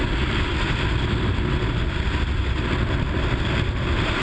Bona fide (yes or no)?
yes